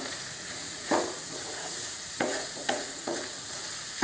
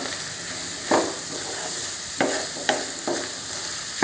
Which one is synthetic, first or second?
first